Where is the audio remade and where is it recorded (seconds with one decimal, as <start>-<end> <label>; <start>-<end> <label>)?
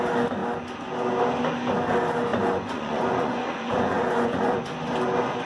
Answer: 0.0-2.3 recorded; 2.3-4.6 remade; 4.6-5.4 recorded